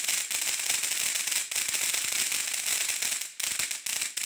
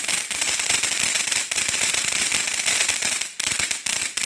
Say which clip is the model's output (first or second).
second